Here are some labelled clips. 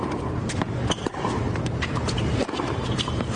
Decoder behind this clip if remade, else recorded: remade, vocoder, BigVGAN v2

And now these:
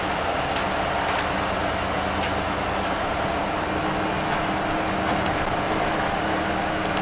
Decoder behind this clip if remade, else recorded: recorded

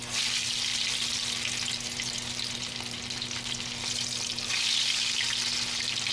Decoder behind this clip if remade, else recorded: recorded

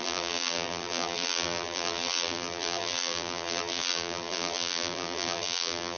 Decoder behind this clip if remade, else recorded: remade, vocoder, BigVGAN v2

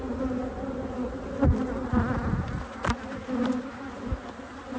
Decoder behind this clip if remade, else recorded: recorded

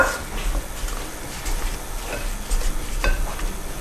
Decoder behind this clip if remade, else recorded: recorded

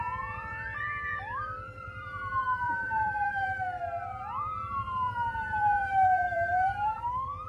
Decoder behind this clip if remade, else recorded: remade, vocoder, BigVGAN v2